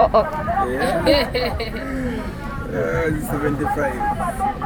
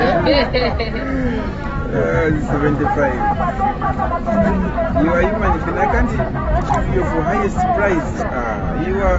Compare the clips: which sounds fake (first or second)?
first